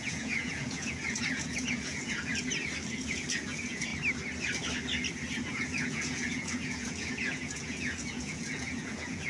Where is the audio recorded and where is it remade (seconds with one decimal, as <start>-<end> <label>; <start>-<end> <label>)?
0.0-2.3 remade; 2.3-2.9 recorded; 2.9-3.9 remade; 3.9-5.4 recorded; 5.4-9.3 remade